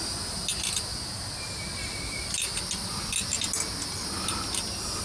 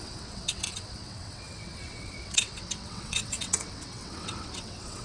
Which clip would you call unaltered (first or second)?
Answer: first